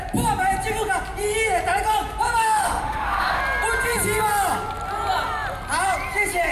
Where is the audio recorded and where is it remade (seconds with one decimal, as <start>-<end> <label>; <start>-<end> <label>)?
0.0-2.4 recorded; 2.4-3.4 remade; 3.4-6.5 recorded